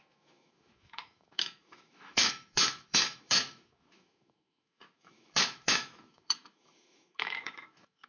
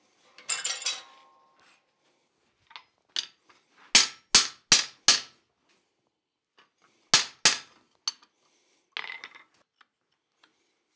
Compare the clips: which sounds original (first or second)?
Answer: second